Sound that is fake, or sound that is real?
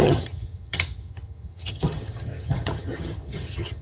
fake